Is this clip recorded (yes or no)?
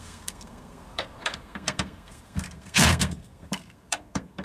no